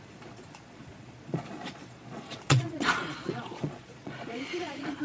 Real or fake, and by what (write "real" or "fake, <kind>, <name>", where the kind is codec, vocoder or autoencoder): fake, vocoder, Vocos